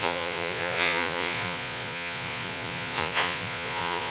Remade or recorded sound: remade